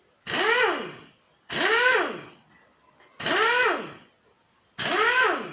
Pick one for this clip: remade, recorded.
recorded